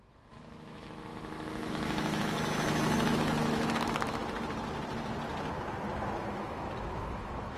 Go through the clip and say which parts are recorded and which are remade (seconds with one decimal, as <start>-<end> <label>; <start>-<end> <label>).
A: 0.0-4.2 remade; 4.2-6.3 recorded; 6.3-7.6 remade